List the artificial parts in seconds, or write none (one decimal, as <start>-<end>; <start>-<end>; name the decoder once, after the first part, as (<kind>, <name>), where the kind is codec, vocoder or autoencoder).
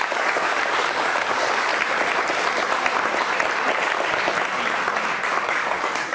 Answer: 0.0-1.7 (codec, DAC); 5.4-6.1